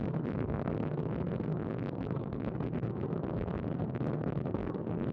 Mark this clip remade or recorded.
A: remade